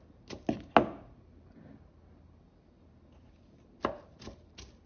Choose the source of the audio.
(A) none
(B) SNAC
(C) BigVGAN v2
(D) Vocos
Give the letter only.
A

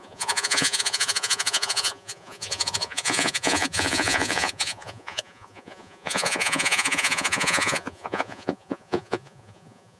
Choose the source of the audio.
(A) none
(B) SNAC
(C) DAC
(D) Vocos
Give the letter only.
D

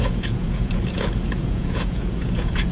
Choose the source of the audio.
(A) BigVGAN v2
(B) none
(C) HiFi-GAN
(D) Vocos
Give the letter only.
D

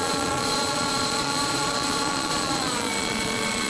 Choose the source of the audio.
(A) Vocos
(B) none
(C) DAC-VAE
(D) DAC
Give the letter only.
A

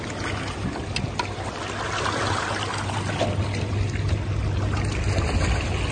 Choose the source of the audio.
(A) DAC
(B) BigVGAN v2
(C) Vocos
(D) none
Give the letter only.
D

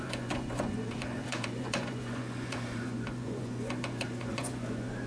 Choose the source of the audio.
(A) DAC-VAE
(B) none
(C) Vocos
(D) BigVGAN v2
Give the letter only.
C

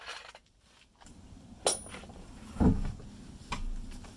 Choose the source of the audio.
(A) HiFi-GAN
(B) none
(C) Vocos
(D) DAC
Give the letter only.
B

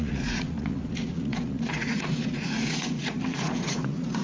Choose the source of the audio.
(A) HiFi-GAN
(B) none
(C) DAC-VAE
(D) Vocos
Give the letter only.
D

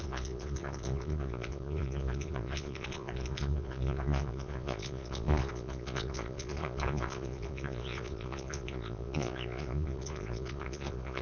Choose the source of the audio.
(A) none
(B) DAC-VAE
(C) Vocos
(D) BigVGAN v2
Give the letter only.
C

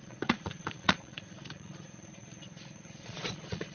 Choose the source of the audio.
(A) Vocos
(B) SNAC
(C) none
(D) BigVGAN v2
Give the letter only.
A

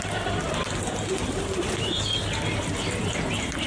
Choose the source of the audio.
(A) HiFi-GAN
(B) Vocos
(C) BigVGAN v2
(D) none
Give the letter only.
D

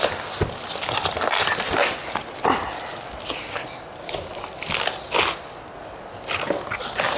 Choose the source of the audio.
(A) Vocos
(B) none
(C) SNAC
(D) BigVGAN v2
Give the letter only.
B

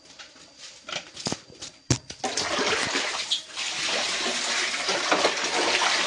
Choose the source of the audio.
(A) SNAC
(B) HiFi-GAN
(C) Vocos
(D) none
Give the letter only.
D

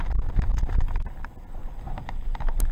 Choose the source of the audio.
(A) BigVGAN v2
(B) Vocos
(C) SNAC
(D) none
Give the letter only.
D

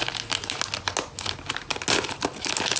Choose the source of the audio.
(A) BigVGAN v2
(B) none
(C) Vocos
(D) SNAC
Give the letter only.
B